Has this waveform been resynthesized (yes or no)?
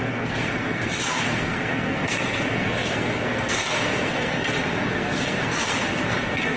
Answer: yes